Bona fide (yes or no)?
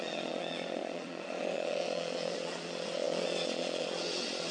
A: no